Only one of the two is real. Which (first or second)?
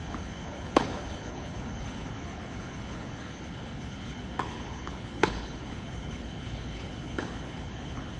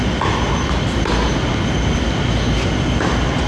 second